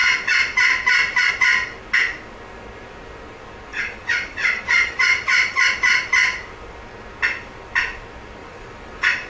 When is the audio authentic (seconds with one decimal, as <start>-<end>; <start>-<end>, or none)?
0.0-3.7; 5.7-8.4